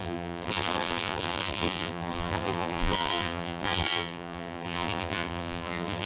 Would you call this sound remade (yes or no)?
yes